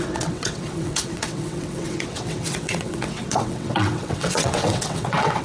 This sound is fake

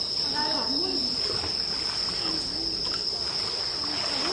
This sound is real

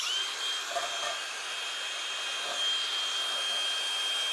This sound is real